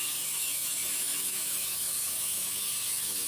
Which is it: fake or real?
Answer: fake